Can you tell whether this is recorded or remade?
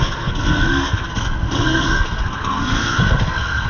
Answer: remade